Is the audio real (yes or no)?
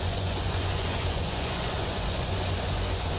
no